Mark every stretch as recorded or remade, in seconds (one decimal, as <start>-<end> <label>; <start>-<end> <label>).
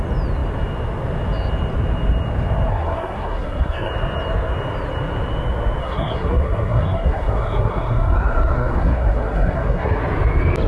0.0-2.7 recorded; 2.7-3.9 remade; 3.9-5.8 recorded; 5.8-10.0 remade; 10.0-10.7 recorded